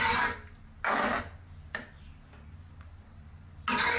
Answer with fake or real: real